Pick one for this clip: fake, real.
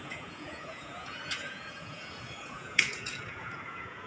fake